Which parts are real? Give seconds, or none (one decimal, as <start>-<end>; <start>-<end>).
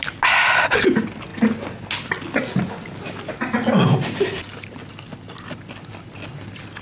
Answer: 0.0-6.8